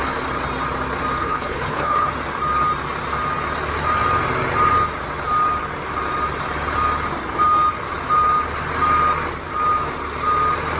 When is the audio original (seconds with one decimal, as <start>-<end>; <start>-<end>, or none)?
0.0-1.2; 2.1-10.8